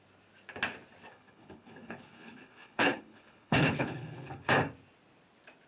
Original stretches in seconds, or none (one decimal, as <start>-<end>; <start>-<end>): 0.0-1.1; 4.5-5.7